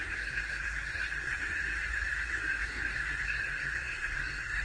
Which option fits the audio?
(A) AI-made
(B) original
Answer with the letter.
A